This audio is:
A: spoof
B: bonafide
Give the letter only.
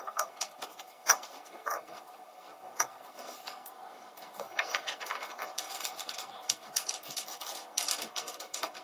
A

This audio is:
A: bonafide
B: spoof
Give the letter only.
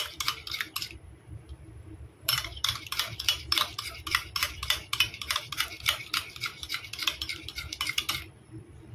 B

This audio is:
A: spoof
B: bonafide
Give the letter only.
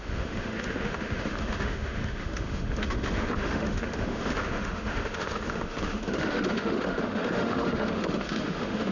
A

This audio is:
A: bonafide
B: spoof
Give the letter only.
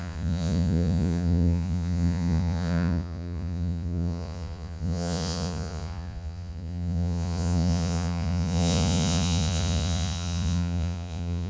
B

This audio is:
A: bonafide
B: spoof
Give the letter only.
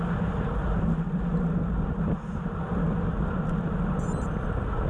A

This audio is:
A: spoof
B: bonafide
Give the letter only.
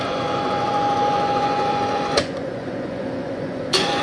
A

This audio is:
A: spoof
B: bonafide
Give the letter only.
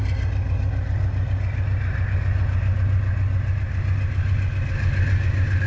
B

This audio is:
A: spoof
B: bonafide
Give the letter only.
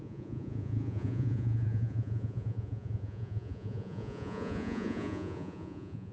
A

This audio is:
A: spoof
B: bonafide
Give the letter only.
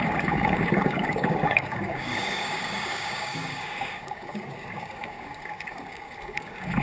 A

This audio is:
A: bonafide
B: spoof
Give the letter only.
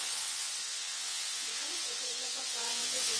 B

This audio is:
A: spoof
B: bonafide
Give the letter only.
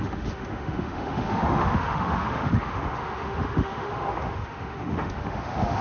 A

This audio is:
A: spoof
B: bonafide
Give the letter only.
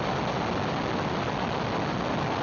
B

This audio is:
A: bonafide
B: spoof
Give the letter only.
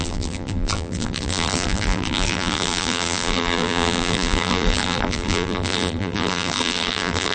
B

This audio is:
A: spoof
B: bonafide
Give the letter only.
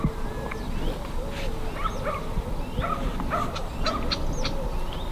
B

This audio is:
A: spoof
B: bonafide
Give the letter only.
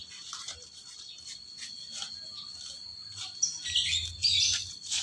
B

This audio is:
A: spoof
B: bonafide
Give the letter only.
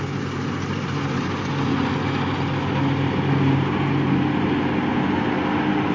B